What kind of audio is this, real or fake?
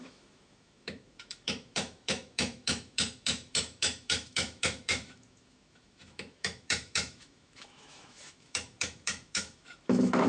fake